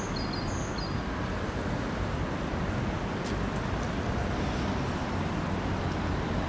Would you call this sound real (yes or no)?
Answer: yes